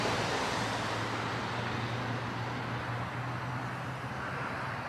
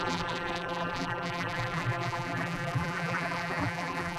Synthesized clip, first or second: second